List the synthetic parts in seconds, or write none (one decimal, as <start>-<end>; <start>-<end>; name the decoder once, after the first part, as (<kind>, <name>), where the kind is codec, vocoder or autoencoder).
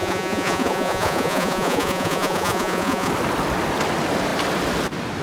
0.0-3.1 (vocoder, Vocos)